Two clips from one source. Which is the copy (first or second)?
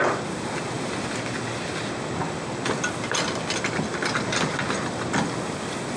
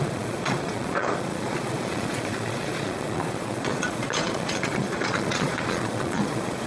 second